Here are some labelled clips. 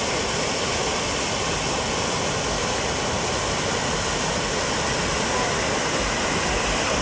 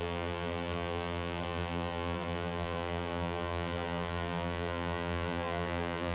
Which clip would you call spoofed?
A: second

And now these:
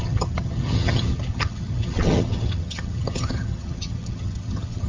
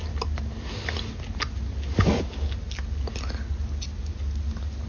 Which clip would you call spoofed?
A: first